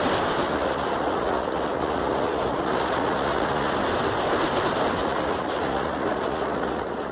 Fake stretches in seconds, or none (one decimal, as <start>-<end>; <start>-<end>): 0.4-3.7; 5.0-7.1